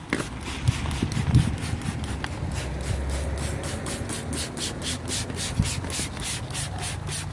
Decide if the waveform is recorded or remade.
recorded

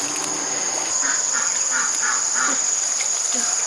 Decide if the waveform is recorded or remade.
recorded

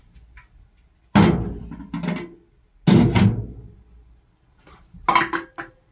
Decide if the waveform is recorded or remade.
recorded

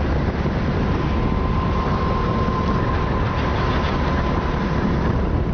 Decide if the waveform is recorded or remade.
recorded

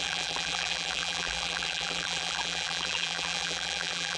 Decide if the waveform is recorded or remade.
remade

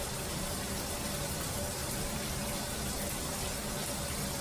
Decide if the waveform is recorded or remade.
recorded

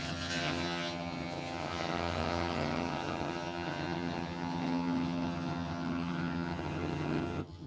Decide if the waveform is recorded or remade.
remade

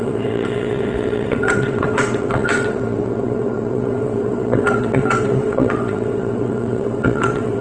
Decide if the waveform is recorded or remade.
remade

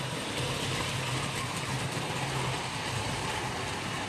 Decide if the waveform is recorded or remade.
recorded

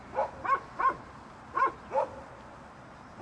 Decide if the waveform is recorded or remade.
recorded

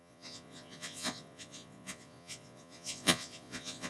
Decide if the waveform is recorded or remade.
remade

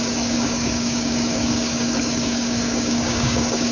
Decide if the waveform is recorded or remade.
remade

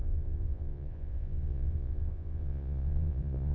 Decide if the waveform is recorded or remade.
remade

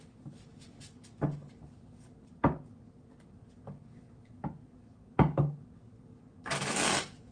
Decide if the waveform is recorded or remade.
remade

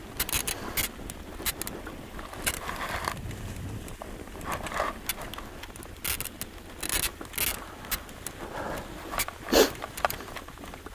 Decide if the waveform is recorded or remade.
recorded